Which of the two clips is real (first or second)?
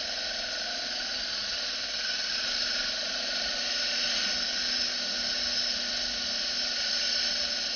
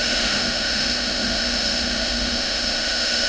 first